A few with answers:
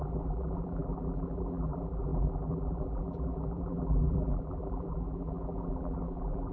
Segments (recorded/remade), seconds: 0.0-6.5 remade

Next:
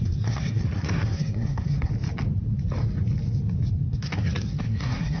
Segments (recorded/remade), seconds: 0.0-1.9 remade; 1.9-3.7 recorded; 3.7-5.2 remade

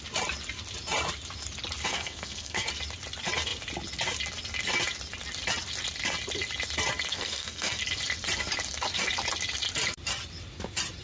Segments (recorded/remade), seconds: 0.0-1.9 recorded; 1.9-2.7 remade; 2.7-7.1 recorded; 7.1-7.8 remade; 7.8-11.0 recorded